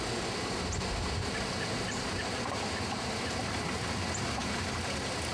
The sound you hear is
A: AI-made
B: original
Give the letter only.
B